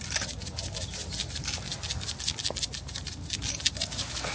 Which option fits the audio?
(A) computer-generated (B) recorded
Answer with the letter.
B